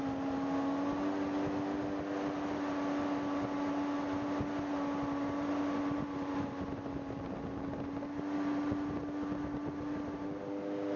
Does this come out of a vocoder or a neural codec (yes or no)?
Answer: no